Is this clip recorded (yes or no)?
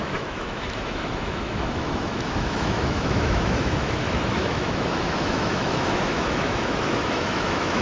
no